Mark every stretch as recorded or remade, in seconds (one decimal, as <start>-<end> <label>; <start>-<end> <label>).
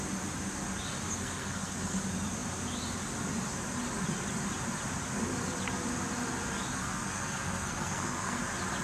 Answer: 0.0-1.2 recorded; 1.2-2.0 remade; 2.0-6.7 recorded; 6.7-8.4 remade; 8.4-8.8 recorded